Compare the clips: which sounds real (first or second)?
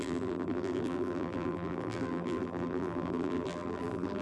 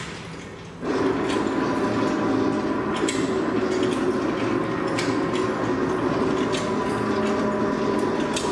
second